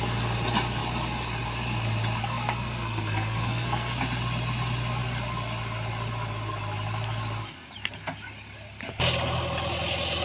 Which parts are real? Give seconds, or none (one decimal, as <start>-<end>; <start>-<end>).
0.0-2.2; 4.0-10.2